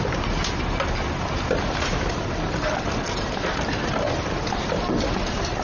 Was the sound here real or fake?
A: real